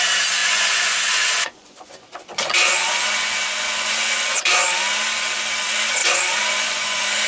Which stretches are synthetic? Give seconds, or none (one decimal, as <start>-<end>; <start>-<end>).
0.4-4.8; 6.0-7.3